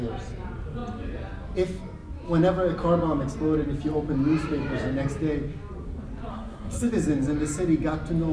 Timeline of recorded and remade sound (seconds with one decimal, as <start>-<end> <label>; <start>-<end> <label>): 0.0-6.3 recorded; 6.3-6.9 remade; 6.9-8.3 recorded